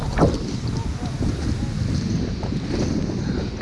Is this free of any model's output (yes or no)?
yes